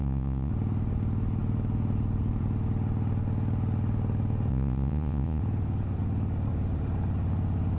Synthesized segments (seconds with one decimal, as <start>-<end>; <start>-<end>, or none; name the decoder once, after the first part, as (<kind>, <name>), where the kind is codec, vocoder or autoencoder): 0.0-0.5 (vocoder, Vocos); 4.5-5.4